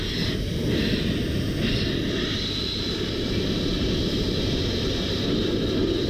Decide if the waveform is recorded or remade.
remade